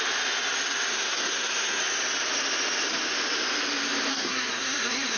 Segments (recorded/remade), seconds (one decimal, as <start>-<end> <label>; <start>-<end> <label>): 0.0-0.9 recorded; 0.9-1.8 remade; 1.8-4.1 recorded; 4.1-5.2 remade